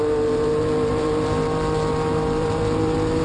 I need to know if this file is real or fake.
fake